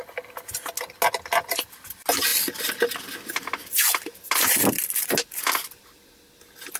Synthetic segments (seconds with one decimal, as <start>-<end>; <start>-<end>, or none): none